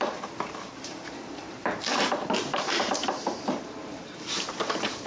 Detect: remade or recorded remade